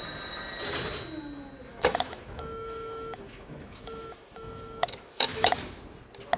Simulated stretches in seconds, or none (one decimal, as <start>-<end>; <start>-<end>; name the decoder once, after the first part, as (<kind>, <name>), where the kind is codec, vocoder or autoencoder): 1.7-5.5 (autoencoder, DAC-VAE)